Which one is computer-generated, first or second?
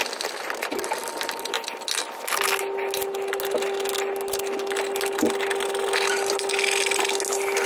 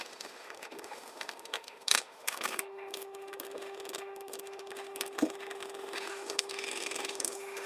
second